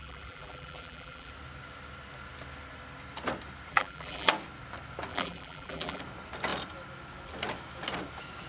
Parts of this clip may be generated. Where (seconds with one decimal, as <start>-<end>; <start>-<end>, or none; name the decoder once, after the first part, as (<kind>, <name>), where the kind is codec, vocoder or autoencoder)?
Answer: 0.0-1.3 (vocoder, BigVGAN v2); 3.7-4.3; 5.1-6.0